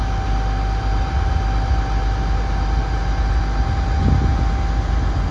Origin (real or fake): real